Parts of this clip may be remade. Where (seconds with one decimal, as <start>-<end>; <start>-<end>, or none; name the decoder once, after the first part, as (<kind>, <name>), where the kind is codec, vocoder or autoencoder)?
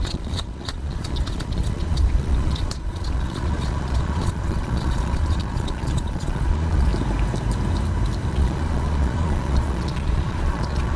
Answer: 0.0-6.9 (vocoder, Vocos); 8.3-11.0